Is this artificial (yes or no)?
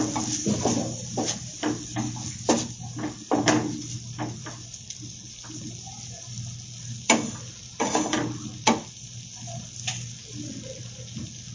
no